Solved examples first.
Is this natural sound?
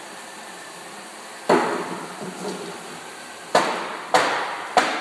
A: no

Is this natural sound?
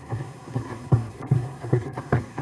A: no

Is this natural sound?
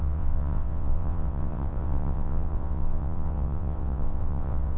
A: no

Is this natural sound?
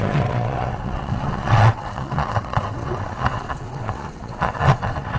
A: no